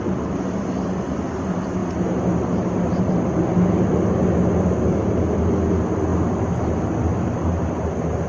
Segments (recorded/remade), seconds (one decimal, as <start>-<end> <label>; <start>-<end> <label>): 0.0-8.3 recorded